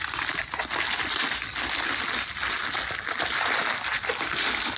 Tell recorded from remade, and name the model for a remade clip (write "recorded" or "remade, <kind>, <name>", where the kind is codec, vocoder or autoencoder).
recorded